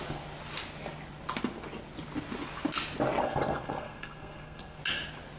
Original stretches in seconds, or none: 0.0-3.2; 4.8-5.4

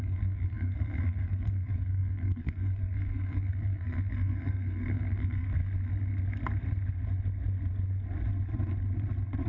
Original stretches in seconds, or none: 5.6-9.5

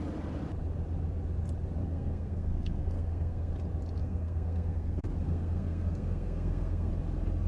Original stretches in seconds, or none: 0.0-1.8; 3.5-4.0; 6.9-7.5